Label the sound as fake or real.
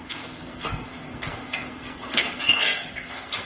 fake